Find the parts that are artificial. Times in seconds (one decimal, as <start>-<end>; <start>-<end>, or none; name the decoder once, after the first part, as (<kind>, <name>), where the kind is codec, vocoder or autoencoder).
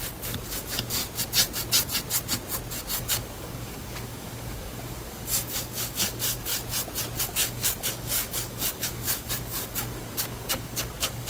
0.0-1.0 (codec, DAC); 3.0-6.5; 7.2-11.3